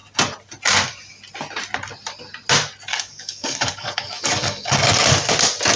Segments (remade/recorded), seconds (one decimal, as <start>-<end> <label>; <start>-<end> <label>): 0.0-2.9 recorded; 2.9-5.1 remade; 5.1-5.8 recorded